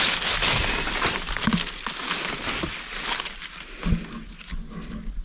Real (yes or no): yes